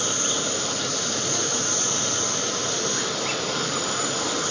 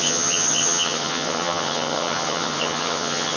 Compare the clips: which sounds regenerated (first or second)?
second